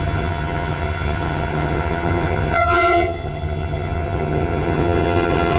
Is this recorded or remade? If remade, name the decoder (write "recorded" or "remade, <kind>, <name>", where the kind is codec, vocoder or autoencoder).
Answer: remade, vocoder, HiFi-GAN